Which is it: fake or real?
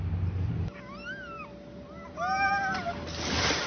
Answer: real